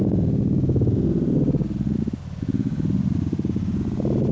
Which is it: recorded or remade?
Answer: recorded